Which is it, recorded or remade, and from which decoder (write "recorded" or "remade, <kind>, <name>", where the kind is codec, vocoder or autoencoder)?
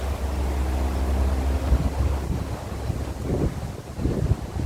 recorded